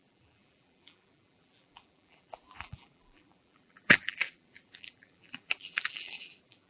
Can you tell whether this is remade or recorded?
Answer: remade